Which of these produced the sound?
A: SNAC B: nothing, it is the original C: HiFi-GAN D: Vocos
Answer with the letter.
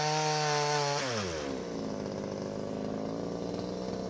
B